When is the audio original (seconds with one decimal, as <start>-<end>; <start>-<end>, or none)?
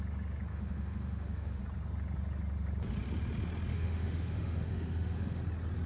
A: 0.0-0.5; 1.6-3.7; 5.4-5.9